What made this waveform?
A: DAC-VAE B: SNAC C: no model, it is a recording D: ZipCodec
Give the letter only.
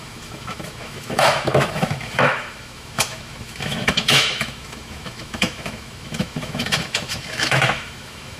A